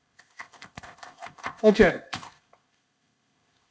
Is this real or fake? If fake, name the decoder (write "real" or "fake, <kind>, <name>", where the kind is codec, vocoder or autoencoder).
fake, codec, ZipCodec